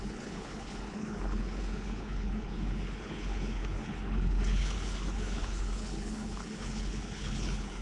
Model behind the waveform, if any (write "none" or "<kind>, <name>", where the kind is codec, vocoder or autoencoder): codec, HILCodec